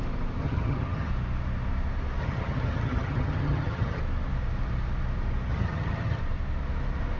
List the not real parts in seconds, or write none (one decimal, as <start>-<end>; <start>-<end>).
0.4-1.1; 2.2-4.0; 5.5-6.2